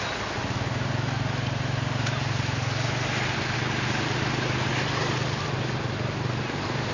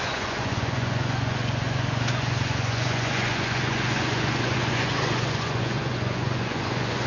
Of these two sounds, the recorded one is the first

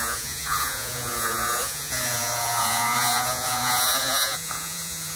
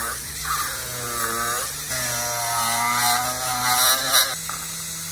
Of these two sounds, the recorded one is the second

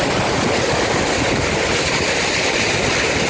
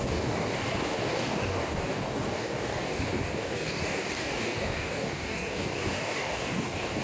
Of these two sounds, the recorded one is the first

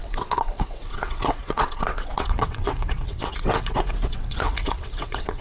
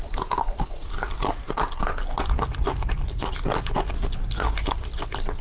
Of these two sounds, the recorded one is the second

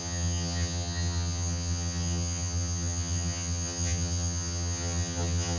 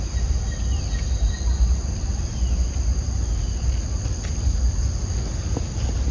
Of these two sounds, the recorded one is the second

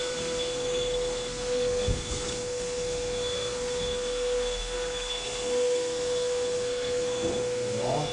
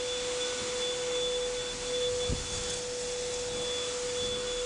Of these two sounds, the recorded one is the second